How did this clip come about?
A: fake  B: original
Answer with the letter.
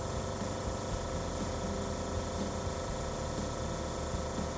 B